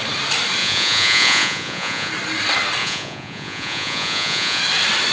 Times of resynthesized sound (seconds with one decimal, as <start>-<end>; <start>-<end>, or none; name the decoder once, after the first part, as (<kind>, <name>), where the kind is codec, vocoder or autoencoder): 0.6-2.1 (vocoder, Vocos); 2.8-4.6